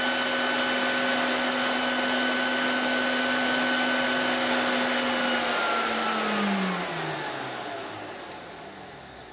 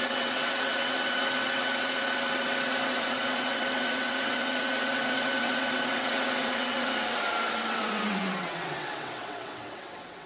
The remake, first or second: second